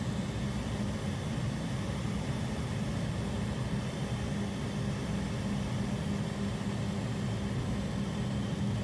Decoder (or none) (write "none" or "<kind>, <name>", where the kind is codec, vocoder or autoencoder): none